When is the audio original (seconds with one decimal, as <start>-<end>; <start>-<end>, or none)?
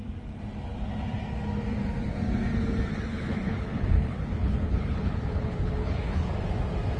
0.0-2.9; 6.3-7.0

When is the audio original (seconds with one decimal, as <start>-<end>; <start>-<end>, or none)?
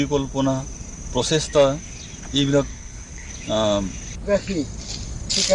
0.0-2.7; 3.3-5.5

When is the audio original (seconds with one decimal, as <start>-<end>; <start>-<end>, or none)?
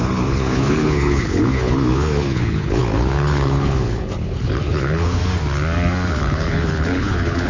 5.2-6.1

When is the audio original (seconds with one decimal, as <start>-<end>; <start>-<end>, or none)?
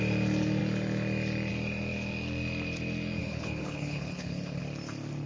0.0-3.2; 4.6-5.3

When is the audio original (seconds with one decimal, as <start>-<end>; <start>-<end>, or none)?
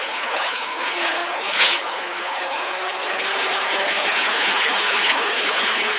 none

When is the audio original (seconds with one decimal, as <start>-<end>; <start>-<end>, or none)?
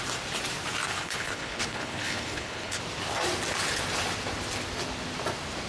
0.0-0.9; 2.8-5.7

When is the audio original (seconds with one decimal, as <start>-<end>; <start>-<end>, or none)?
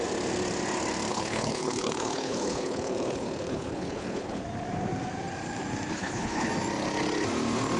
0.0-1.1; 4.4-5.9; 6.5-7.8